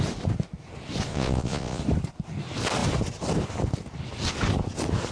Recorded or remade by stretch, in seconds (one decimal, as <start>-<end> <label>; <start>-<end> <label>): 0.0-1.1 recorded; 1.1-1.8 remade; 1.8-5.1 recorded